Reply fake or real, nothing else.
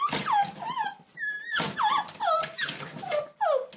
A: real